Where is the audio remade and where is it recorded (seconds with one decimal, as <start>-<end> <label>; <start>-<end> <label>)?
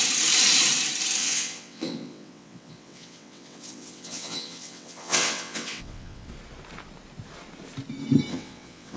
0.0-1.2 recorded; 1.2-6.3 remade; 6.3-8.3 recorded; 8.3-9.0 remade